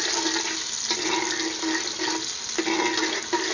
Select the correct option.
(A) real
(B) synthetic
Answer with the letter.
A